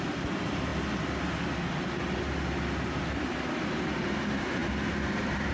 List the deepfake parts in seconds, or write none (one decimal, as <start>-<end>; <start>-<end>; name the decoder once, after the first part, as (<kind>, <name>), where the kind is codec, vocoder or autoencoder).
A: 0.0-0.7 (vocoder, BigVGAN v2); 4.0-5.5